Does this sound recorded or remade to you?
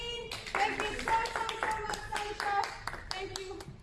recorded